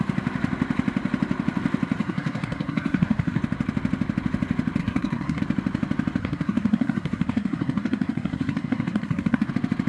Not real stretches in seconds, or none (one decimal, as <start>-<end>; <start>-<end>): 2.0-3.4; 4.8-5.4; 6.2-9.5